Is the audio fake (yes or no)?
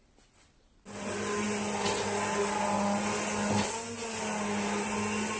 no